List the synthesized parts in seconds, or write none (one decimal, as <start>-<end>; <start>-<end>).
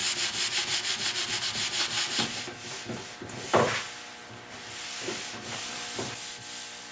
none